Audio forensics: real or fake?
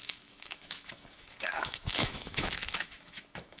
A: fake